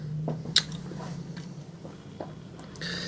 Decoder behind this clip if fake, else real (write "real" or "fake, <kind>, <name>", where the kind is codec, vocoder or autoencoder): real